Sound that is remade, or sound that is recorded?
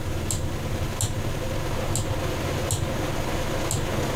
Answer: recorded